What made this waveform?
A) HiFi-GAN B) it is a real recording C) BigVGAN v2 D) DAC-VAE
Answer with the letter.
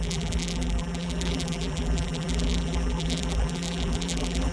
C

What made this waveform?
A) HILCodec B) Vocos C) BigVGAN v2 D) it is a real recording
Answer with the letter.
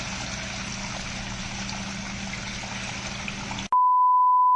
D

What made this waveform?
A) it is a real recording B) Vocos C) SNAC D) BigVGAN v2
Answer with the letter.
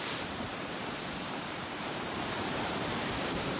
D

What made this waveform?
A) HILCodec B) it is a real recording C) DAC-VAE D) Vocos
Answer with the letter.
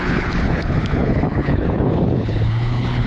A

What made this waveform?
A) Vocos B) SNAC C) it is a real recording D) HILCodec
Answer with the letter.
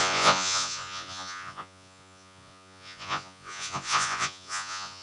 A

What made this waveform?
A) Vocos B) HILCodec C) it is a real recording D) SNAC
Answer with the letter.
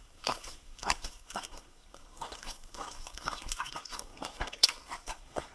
D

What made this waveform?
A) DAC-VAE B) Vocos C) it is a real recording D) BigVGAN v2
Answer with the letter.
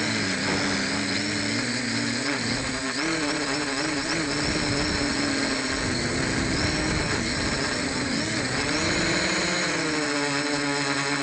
C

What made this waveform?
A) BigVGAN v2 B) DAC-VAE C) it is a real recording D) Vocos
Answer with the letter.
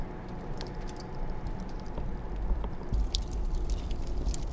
A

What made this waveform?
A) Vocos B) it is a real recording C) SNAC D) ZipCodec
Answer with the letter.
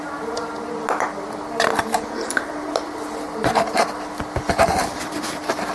B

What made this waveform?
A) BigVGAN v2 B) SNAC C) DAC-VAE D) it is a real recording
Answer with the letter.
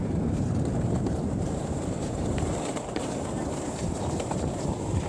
A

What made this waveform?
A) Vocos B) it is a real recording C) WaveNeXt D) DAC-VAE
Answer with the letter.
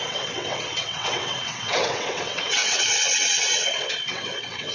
C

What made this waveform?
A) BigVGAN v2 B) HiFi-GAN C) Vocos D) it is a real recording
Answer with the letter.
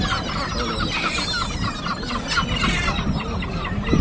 D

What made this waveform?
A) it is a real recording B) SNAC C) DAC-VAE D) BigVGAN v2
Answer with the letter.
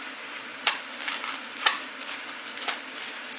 D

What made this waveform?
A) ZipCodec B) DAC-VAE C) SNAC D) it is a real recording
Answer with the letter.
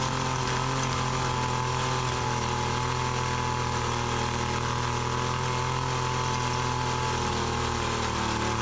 D